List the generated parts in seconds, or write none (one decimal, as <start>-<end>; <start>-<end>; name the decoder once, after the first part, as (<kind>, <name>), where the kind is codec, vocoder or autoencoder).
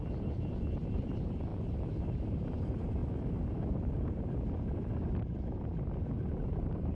0.0-1.5 (vocoder, BigVGAN v2); 2.6-3.0; 6.4-6.9